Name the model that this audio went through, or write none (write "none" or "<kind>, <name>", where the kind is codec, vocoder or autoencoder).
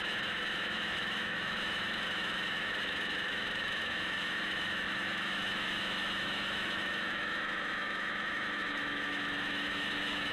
autoencoder, DAC-VAE